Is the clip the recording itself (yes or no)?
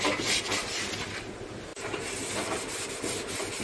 yes